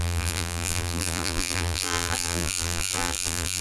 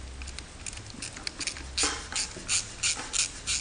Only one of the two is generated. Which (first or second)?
first